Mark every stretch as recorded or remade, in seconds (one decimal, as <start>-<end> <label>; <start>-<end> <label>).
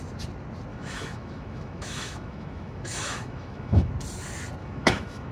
0.0-0.7 recorded; 0.7-3.9 remade; 3.9-4.6 recorded; 4.6-5.3 remade